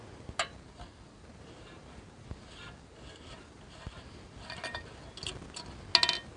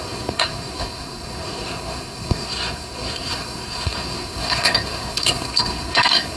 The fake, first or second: second